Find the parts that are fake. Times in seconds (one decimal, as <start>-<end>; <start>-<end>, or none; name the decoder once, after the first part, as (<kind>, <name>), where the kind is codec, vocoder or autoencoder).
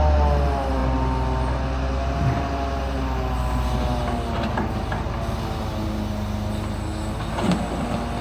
none